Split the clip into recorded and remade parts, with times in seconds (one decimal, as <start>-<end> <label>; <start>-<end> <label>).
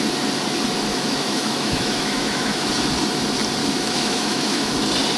0.0-0.9 recorded; 0.9-2.7 remade; 2.7-3.6 recorded; 3.6-4.7 remade; 4.7-5.2 recorded